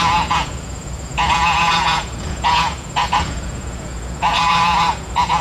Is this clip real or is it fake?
fake